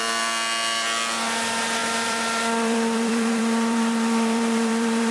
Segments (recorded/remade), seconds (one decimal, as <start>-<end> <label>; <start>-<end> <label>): 0.0-1.8 recorded; 1.8-5.1 remade